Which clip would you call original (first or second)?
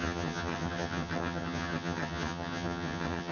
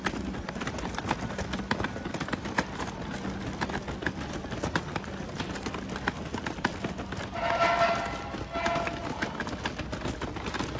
second